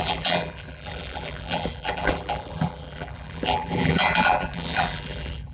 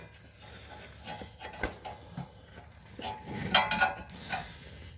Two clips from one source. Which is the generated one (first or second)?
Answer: first